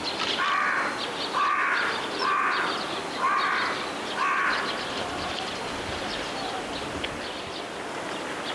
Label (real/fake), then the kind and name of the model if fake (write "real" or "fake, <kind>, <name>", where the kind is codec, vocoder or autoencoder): real